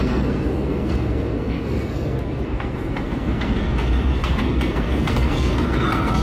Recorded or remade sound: remade